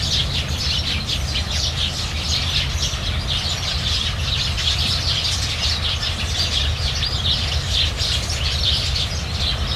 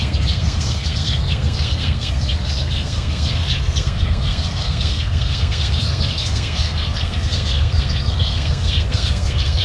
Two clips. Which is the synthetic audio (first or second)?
second